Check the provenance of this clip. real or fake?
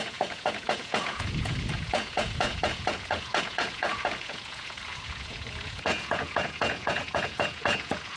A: fake